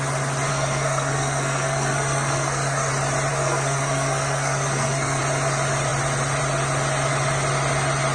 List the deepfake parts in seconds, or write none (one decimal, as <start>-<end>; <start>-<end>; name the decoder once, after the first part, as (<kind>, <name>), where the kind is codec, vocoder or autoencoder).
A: 0.5-2.9 (codec, SNAC); 3.3-5.2